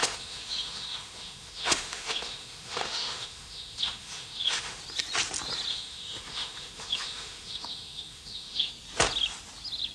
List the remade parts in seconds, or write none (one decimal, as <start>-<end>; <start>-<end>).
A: 0.0-4.8; 5.7-8.7